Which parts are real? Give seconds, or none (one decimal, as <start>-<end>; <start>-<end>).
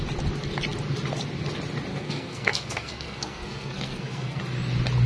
0.0-1.9; 4.4-5.1